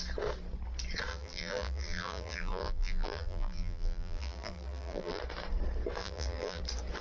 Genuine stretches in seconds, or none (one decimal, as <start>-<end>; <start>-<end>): 0.0-1.1; 5.2-6.0; 6.6-7.0